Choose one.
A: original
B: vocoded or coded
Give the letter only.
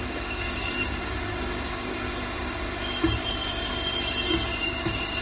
B